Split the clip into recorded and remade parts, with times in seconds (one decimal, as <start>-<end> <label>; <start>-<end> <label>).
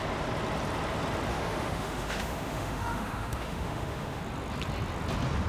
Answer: 0.0-1.3 recorded; 1.3-4.2 remade; 4.2-5.5 recorded